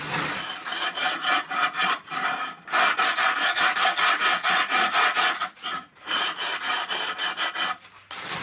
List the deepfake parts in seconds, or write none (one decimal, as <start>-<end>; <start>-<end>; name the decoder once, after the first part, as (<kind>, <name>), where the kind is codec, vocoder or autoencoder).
3.7-6.7 (vocoder, Vocos)